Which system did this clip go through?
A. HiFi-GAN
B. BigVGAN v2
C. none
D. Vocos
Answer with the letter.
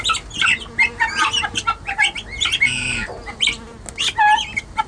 C